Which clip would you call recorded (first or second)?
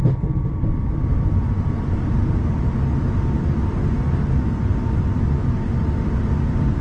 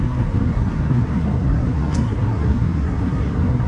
first